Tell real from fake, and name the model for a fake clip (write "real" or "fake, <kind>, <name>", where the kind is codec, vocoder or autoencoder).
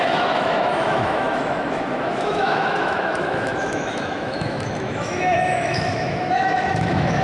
fake, autoencoder, DAC-VAE